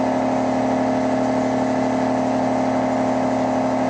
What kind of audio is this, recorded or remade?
recorded